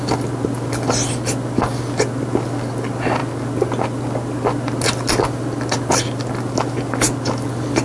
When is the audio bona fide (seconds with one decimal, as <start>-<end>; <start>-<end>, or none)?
0.0-7.8

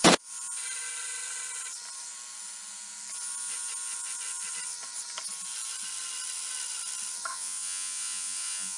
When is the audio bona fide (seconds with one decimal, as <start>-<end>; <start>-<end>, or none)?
0.0-7.3

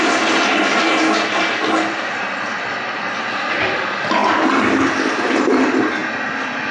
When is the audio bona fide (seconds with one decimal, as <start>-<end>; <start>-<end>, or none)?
0.0-6.7

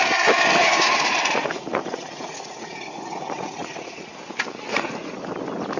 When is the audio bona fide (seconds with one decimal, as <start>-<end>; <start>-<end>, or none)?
0.0-0.6; 4.1-4.7; 5.3-5.8

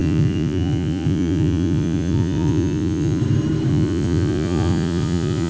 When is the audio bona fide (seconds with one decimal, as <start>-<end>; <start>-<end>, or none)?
3.2-3.7